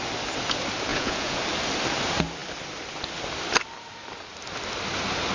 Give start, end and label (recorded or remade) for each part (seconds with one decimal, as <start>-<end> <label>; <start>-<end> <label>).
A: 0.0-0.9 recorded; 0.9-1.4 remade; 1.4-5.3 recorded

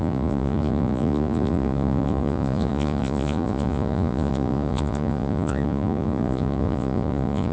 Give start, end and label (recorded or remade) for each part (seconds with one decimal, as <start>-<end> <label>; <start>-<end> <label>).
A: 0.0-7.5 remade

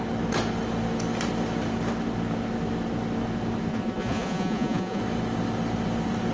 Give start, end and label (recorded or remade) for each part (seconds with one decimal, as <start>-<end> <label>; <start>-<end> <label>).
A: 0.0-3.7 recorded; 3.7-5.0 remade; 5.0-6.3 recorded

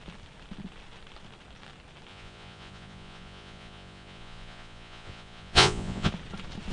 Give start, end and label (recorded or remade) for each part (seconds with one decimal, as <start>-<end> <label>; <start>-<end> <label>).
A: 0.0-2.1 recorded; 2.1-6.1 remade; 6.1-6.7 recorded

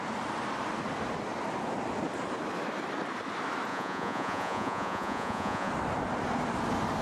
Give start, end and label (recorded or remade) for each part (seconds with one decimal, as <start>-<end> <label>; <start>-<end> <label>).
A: 0.0-3.7 recorded; 3.7-5.7 remade; 5.7-7.0 recorded

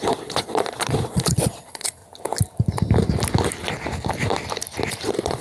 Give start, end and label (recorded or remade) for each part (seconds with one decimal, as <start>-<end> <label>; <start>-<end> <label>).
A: 0.0-2.0 remade; 2.0-4.9 recorded; 4.9-5.4 remade

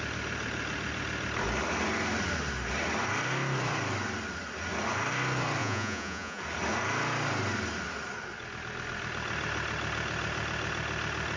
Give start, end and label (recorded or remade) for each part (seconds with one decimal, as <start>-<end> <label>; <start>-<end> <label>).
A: 0.0-5.6 recorded; 5.6-6.4 remade; 6.4-11.4 recorded